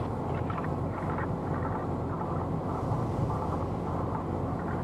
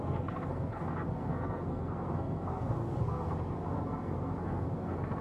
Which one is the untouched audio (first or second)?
first